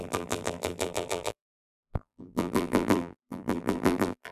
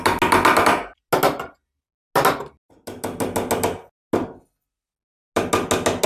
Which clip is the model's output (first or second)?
first